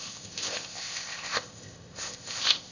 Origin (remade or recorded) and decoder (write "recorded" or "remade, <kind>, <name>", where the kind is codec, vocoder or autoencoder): remade, codec, ZipCodec